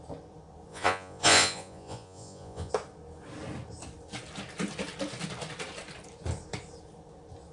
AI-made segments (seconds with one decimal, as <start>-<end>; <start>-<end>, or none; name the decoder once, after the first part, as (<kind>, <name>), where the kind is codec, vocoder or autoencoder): 0.7-2.7 (vocoder, Vocos)